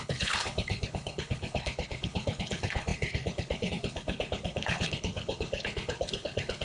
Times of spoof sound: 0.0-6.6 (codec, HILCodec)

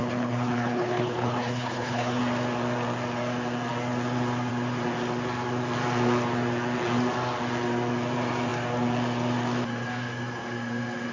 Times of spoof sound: 0.0-2.2 (codec, HILCodec)

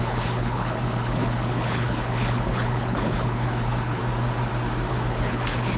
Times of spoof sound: 0.0-4.0 (codec, HILCodec); 4.9-5.8

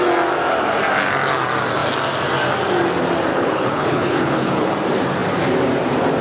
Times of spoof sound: 3.3-4.7 (codec, HILCodec)

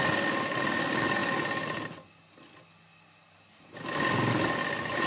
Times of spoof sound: none